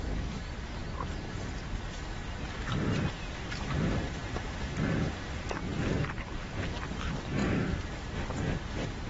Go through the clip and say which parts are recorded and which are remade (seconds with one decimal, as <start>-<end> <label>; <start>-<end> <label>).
0.0-7.4 recorded; 7.4-8.0 remade; 8.0-9.1 recorded